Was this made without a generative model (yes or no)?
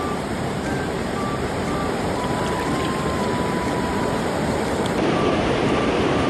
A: no